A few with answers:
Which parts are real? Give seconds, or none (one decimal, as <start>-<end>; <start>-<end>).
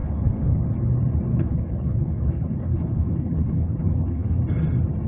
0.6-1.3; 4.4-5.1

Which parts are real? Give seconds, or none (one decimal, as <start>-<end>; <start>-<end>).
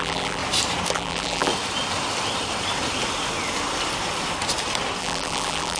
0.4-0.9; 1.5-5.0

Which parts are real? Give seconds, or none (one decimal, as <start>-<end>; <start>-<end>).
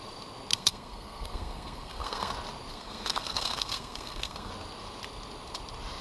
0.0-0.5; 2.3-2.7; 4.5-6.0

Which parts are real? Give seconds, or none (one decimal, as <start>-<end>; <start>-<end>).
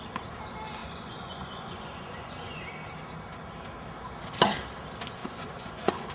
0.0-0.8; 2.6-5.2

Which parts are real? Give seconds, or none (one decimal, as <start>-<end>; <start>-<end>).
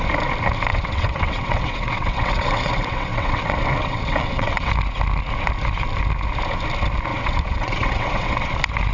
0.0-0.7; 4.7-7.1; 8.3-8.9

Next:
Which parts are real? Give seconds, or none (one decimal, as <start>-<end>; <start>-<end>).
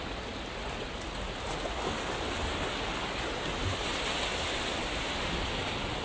0.0-6.0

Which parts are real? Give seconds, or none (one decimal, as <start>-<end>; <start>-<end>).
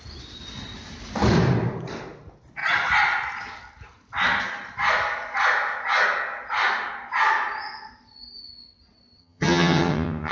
0.0-9.2